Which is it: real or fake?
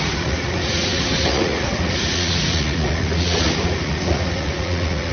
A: fake